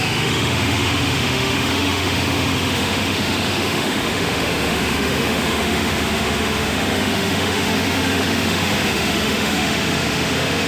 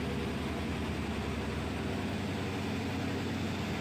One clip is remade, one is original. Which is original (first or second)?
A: second